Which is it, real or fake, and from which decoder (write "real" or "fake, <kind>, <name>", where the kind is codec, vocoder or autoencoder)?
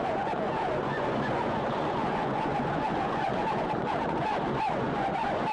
fake, vocoder, Vocos